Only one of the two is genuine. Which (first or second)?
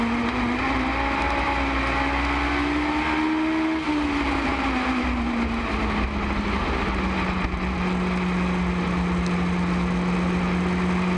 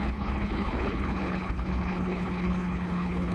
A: first